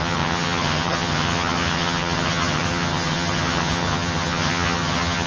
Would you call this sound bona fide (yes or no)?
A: no